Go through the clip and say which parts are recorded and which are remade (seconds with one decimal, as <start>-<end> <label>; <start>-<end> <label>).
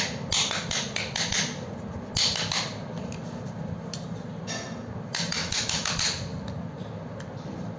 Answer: 0.0-5.4 recorded; 5.4-5.9 remade; 5.9-7.8 recorded